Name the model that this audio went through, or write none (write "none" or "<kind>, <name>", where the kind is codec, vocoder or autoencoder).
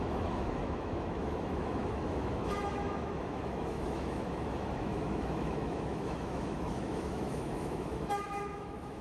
autoencoder, DAC-VAE